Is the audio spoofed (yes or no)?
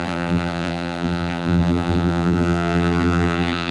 yes